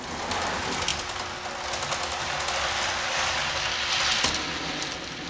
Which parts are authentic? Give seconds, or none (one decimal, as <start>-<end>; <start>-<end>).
0.0-5.3